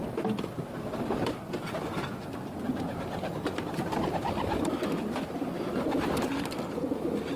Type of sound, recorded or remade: recorded